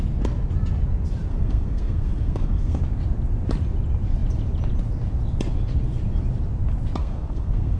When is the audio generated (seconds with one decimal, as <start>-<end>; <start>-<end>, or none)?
1.3-2.8; 7.0-7.8